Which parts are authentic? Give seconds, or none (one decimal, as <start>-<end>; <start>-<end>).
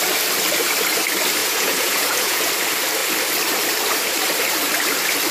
0.0-1.4; 2.5-5.3